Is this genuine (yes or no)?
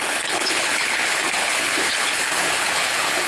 no